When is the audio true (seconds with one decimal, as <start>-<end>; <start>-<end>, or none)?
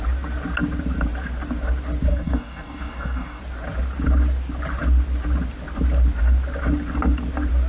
0.0-2.1; 3.4-7.7